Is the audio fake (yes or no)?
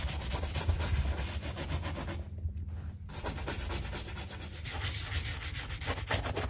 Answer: no